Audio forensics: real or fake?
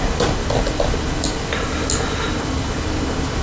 real